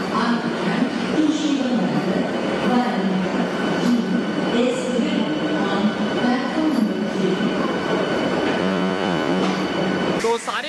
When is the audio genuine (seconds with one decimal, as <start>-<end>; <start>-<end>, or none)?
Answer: 0.0-8.6; 9.4-10.7